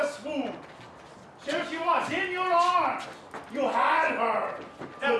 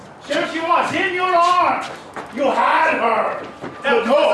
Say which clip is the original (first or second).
first